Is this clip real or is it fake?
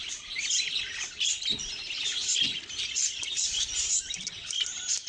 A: fake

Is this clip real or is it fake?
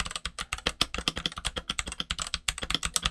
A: real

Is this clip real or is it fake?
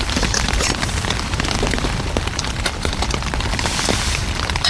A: fake